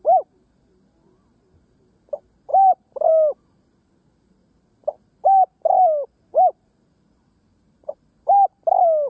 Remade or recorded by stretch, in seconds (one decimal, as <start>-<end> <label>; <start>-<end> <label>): 0.0-2.5 recorded; 2.5-3.1 remade; 3.1-9.1 recorded